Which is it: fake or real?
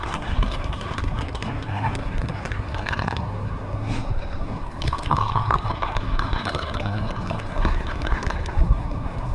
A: fake